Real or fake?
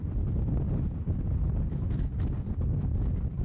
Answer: real